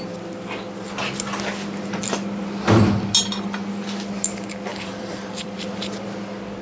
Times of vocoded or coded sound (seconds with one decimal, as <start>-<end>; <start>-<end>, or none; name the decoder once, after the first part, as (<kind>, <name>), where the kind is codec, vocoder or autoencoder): 4.7-5.6 (vocoder, BigVGAN v2)